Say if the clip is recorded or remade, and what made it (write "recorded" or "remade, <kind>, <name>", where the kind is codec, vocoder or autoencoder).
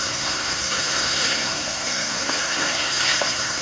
remade, codec, SNAC